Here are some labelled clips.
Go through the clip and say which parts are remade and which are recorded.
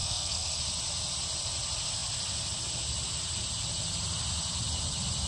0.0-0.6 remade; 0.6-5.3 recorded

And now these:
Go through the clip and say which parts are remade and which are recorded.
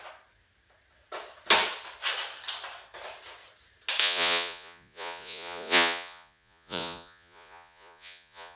0.0-4.0 recorded; 4.0-8.6 remade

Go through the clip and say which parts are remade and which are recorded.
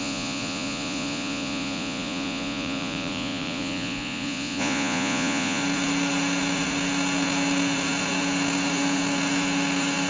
0.0-5.6 remade; 5.6-10.1 recorded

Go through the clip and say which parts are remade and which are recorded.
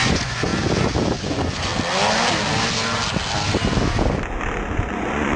0.0-0.5 remade; 0.5-1.2 recorded; 1.2-1.7 remade; 1.7-4.9 recorded; 4.9-5.4 remade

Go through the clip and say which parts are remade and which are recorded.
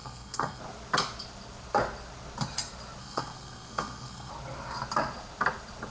0.0-0.6 remade; 0.6-3.0 recorded; 3.0-4.3 remade; 4.3-5.9 recorded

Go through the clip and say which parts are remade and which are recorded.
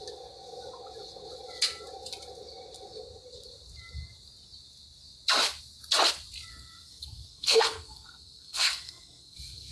0.0-6.5 recorded; 6.5-9.7 remade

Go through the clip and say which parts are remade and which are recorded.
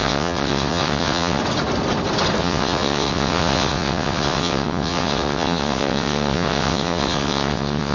0.0-1.4 remade; 1.4-2.4 recorded; 2.4-7.9 remade